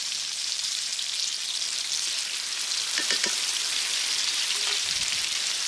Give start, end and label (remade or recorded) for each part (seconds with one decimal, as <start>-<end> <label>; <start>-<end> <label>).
0.0-0.9 remade; 0.9-4.3 recorded; 4.3-5.7 remade